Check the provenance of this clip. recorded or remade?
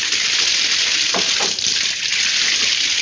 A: recorded